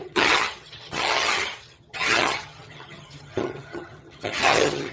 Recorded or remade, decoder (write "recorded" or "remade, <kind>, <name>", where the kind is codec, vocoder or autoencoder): remade, vocoder, HiFi-GAN